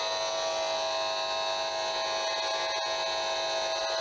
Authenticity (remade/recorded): recorded